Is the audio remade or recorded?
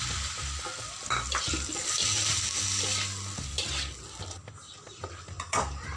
recorded